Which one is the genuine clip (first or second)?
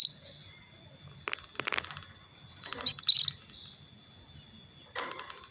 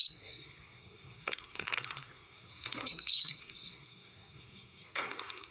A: first